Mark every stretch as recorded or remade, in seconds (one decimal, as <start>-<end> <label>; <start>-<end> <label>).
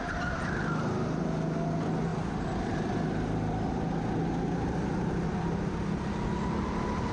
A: 0.0-7.1 recorded